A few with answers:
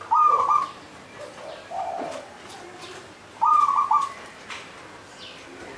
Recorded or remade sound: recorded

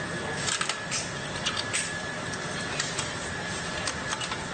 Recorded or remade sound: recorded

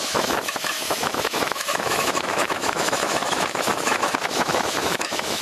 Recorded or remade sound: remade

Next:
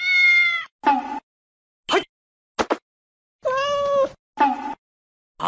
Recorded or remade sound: recorded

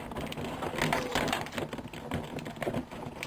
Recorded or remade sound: recorded